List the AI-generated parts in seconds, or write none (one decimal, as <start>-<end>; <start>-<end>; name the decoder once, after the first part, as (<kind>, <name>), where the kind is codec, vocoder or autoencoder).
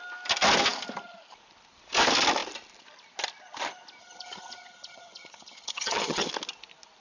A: 4.0-6.3 (vocoder, HiFi-GAN)